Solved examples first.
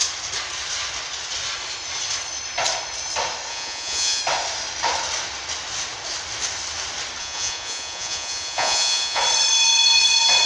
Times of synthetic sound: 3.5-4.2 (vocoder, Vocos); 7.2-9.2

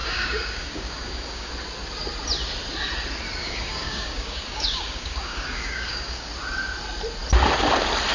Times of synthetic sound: 0.0-1.5 (codec, DAC); 3.4-6.3

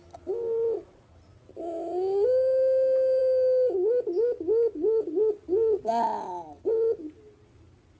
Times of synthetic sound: none

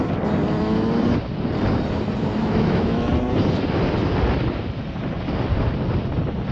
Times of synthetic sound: 2.4-3.1 (autoencoder, DAC-VAE)

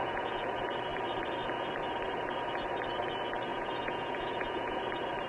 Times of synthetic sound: 0.0-0.5 (vocoder, Vocos); 3.5-4.8

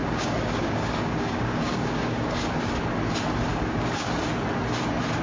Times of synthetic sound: 0.0-2.6 (codec, DAC); 3.5-4.1